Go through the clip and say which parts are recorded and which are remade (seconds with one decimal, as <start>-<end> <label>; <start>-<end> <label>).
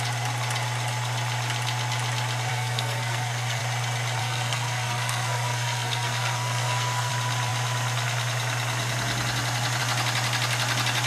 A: 0.0-2.5 recorded; 2.5-3.6 remade; 3.6-4.2 recorded; 4.2-7.1 remade; 7.1-11.1 recorded